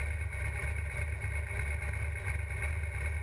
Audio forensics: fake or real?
real